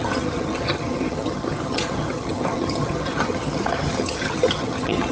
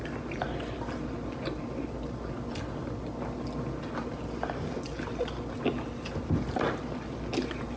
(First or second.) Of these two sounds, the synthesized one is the first